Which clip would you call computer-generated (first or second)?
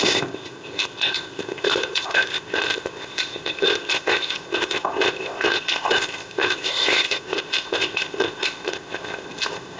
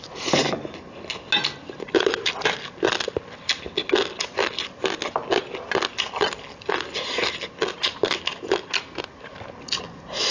first